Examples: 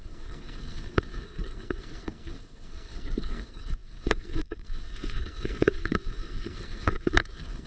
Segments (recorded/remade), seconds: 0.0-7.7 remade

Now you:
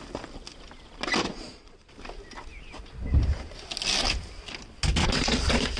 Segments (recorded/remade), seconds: 0.0-1.2 recorded; 1.2-1.9 remade; 1.9-5.0 recorded; 5.0-5.8 remade

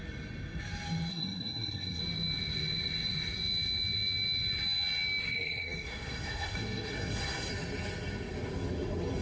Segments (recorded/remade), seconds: 0.0-1.1 recorded; 1.1-2.0 remade; 2.0-5.2 recorded; 5.2-7.5 remade; 7.5-9.2 recorded

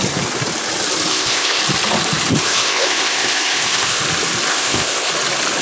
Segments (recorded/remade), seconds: 0.0-1.1 recorded; 1.1-1.6 remade; 1.6-2.4 recorded; 2.4-4.0 remade; 4.0-4.5 recorded; 4.5-5.1 remade; 5.1-5.6 recorded

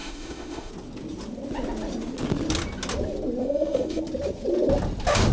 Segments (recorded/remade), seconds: 0.0-0.7 remade; 0.7-3.4 recorded; 3.4-4.0 remade; 4.0-5.3 recorded

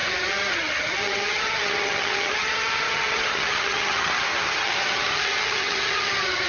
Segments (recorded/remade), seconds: 0.0-6.5 remade

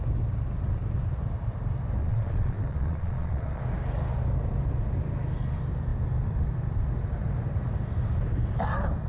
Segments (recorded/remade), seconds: 0.0-2.0 recorded; 2.0-3.6 remade; 3.6-9.1 recorded

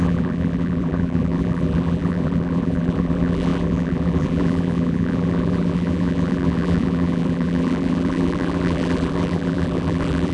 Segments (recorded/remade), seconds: 0.0-10.3 remade